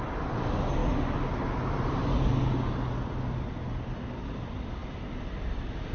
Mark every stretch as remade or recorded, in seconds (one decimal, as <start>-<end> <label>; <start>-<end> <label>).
0.0-5.9 recorded